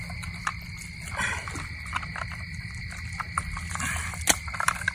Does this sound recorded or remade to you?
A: recorded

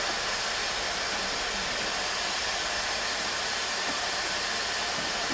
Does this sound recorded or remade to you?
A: remade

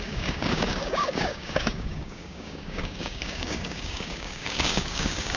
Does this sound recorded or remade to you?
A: remade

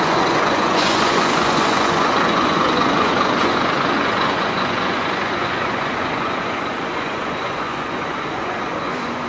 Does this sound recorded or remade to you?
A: remade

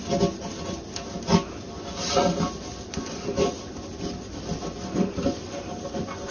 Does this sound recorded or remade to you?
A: recorded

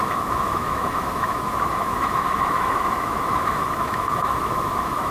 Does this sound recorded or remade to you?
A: remade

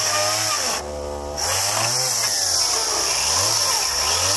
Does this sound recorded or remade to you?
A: recorded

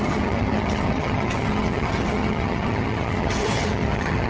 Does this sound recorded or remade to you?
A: remade